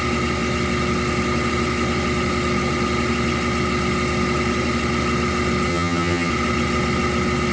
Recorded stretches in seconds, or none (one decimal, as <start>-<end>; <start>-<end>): 0.0-5.7; 6.3-7.5